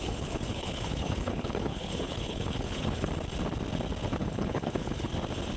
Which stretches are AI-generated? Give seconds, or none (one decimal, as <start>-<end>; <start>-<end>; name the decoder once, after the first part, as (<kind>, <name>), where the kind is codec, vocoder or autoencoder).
0.0-3.1 (codec, HILCodec); 4.2-5.1